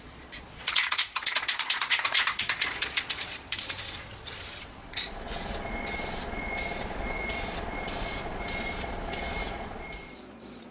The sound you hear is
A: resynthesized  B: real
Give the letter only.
A